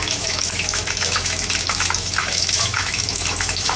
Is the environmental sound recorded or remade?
remade